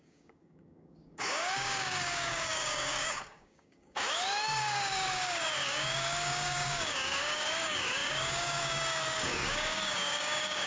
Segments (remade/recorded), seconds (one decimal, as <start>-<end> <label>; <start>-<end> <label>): 0.0-10.7 remade